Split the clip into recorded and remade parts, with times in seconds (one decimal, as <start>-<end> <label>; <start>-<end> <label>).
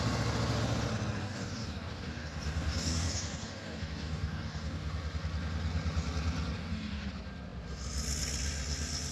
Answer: 0.0-1.2 recorded; 1.2-4.9 remade; 4.9-6.6 recorded; 6.6-7.1 remade; 7.1-9.1 recorded